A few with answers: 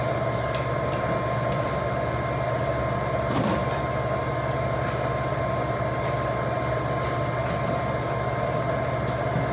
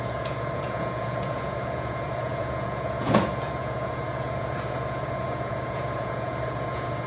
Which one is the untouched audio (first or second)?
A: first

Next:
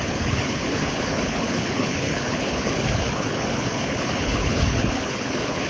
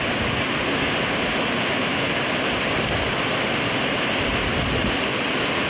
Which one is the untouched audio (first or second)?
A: second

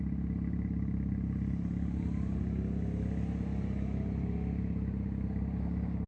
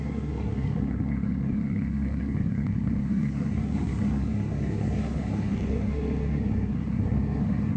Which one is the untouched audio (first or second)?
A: first